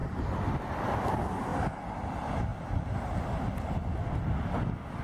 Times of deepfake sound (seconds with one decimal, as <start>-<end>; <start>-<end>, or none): 0.0-0.6; 2.5-3.2